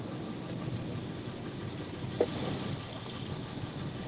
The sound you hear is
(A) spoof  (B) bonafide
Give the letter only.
B